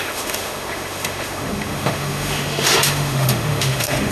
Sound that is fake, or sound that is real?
fake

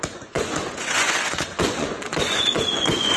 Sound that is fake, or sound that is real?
fake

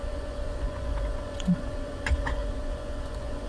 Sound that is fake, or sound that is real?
fake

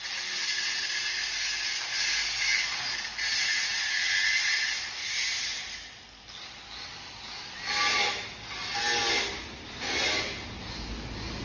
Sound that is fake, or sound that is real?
real